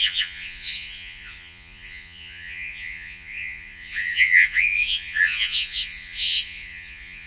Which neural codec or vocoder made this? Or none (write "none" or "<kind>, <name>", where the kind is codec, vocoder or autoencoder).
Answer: vocoder, Vocos